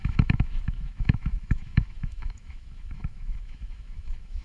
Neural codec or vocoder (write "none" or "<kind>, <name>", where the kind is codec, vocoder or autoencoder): autoencoder, DAC-VAE